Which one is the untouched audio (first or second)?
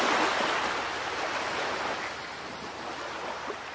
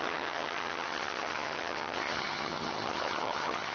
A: first